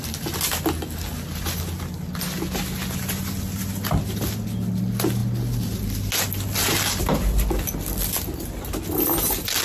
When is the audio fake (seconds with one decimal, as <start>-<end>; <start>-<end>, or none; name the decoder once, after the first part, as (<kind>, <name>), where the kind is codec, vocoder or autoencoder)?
none

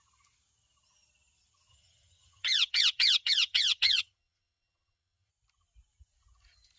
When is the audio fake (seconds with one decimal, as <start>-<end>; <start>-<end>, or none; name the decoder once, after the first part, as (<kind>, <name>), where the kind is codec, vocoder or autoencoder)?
1.7-5.3 (vocoder, HiFi-GAN)

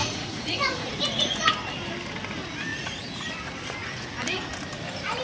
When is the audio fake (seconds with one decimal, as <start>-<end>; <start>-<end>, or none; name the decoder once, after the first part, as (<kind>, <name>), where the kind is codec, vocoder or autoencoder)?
0.0-1.5 (vocoder, Vocos); 2.7-3.3

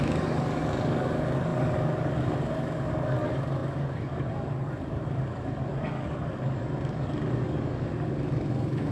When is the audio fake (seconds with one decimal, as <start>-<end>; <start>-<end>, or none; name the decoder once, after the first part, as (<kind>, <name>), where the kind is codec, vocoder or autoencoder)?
0.0-8.9 (codec, DAC)